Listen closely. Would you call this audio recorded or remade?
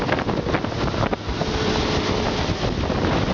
recorded